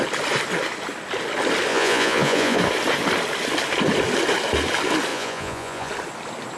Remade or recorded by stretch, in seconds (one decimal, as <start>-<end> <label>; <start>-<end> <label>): 0.0-1.7 recorded; 1.7-2.6 remade; 2.6-5.1 recorded; 5.1-5.9 remade; 5.9-6.6 recorded